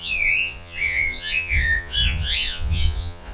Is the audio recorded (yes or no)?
no